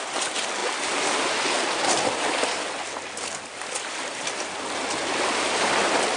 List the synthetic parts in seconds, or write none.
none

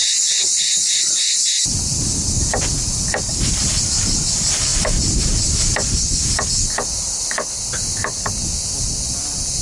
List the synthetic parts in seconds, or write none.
none

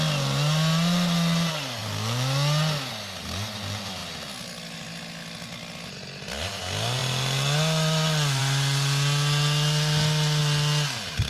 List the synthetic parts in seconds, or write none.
none